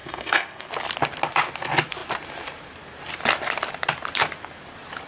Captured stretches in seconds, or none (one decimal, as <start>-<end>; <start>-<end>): 0.7-5.1